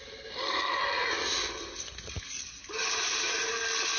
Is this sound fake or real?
real